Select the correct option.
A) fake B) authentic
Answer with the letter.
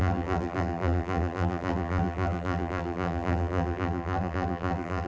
A